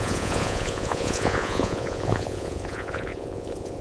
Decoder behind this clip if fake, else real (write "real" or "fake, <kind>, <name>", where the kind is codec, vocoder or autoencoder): fake, vocoder, Vocos